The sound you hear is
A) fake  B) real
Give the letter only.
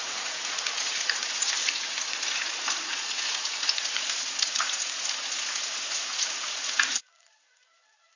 A